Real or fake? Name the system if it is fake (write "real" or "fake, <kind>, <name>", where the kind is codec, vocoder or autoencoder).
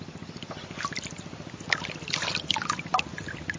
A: real